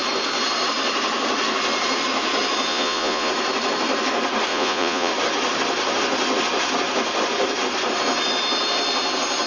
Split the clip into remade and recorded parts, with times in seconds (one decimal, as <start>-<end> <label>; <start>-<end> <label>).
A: 0.0-2.7 recorded; 2.7-3.3 remade; 3.3-4.5 recorded; 4.5-5.1 remade; 5.1-9.5 recorded